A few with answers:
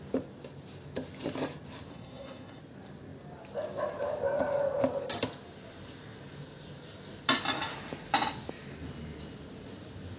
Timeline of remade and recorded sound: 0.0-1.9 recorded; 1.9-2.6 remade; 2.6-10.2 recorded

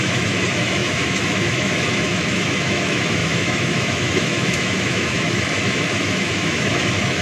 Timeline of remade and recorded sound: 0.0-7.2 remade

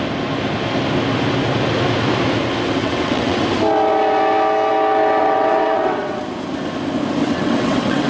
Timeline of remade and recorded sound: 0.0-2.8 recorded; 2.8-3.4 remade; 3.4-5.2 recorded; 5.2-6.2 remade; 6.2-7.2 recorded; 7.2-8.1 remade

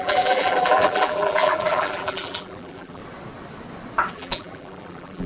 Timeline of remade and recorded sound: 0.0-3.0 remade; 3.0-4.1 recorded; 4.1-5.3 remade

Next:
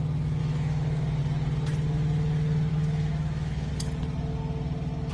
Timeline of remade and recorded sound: 0.0-0.4 recorded; 0.4-1.2 remade; 1.2-2.7 recorded; 2.7-3.7 remade; 3.7-5.1 recorded

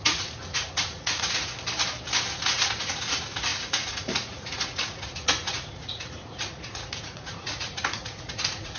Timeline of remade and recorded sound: 0.0-1.5 remade; 1.5-2.3 recorded; 2.3-8.8 remade

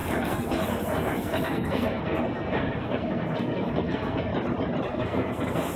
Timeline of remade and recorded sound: 0.0-4.3 remade; 4.3-4.9 recorded; 4.9-5.8 remade

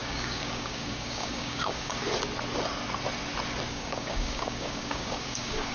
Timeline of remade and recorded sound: 0.0-2.0 remade; 2.0-3.7 recorded; 3.7-5.7 remade